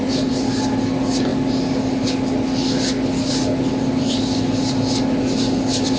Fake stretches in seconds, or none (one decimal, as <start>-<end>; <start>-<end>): none